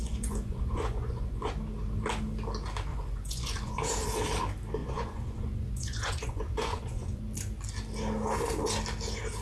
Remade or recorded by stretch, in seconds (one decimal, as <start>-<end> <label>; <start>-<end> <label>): 0.0-1.5 remade; 1.5-2.9 recorded; 2.9-3.8 remade; 3.8-4.8 recorded; 4.8-7.2 remade; 7.2-9.4 recorded